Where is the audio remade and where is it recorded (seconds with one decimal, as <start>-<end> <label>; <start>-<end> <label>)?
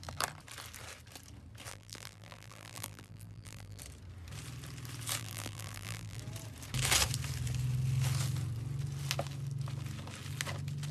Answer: 0.0-1.7 recorded; 1.7-3.8 remade; 3.8-5.2 recorded; 5.2-6.2 remade; 6.2-10.9 recorded